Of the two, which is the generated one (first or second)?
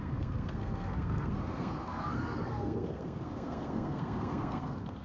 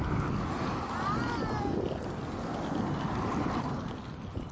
first